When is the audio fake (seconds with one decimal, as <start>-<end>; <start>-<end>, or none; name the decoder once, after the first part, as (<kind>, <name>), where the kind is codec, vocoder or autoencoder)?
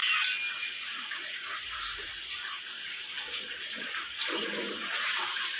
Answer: 0.5-5.6 (vocoder, Vocos)